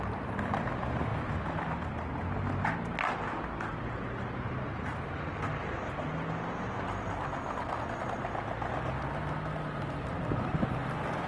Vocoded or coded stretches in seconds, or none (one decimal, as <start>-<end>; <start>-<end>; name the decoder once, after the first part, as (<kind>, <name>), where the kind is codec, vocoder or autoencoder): none